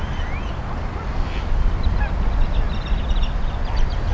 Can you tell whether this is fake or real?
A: real